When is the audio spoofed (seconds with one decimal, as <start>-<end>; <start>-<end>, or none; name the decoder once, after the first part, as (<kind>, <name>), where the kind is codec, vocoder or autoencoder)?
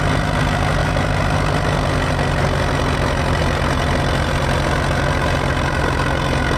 none